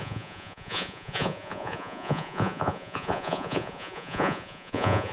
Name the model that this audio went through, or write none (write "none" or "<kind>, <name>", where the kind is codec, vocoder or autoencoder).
vocoder, Vocos